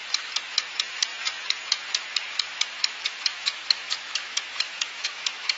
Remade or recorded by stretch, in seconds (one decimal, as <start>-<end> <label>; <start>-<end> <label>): 0.0-0.5 recorded; 0.5-5.6 remade